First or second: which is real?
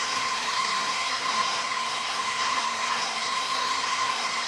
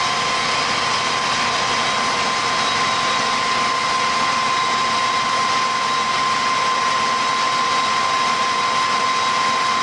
second